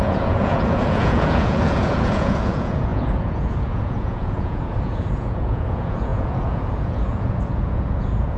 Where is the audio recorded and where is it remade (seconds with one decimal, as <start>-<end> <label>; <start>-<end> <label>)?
0.0-8.4 remade